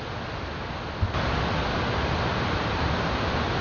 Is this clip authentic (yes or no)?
yes